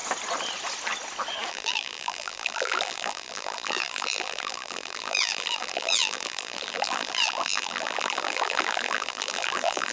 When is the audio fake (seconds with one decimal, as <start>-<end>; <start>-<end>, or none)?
1.5-9.9